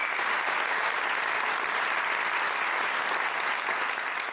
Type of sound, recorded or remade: recorded